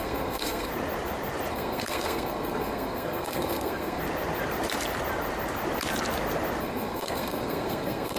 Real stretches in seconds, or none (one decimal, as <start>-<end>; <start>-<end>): 0.7-1.5; 4.0-6.6